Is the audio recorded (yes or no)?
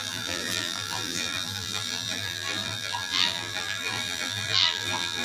no